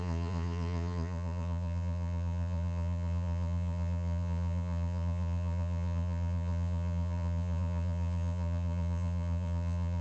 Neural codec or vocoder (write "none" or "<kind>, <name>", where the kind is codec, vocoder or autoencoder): vocoder, Vocos